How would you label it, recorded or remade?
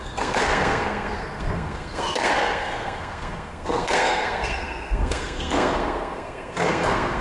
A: remade